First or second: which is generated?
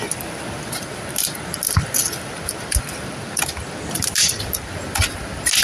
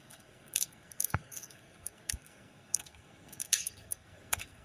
second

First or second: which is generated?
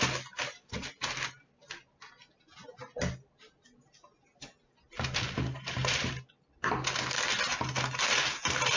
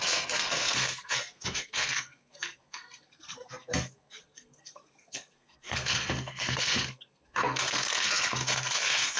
second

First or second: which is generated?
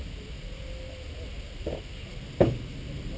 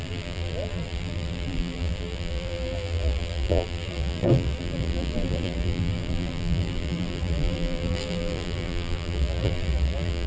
second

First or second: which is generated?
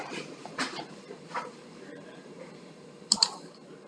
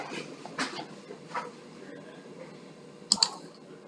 first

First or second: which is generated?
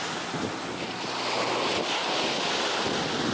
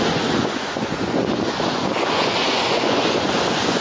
second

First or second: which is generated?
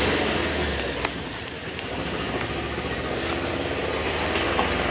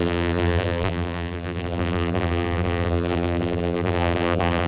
second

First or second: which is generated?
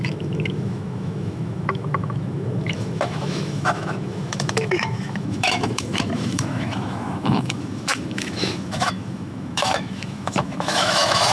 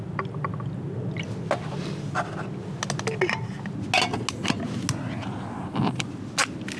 first